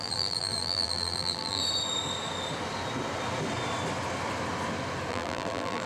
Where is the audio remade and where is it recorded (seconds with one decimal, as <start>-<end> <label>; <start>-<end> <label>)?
0.0-1.6 remade; 1.6-5.1 recorded; 5.1-5.9 remade

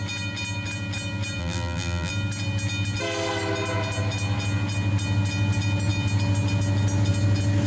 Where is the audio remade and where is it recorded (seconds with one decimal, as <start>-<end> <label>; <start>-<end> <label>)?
0.0-1.4 recorded; 1.4-2.1 remade; 2.1-7.7 recorded

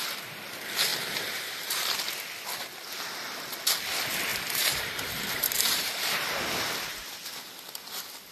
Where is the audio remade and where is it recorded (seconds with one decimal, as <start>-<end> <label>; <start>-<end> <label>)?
0.0-0.9 recorded; 0.9-1.6 remade; 1.6-4.3 recorded; 4.3-6.4 remade; 6.4-8.3 recorded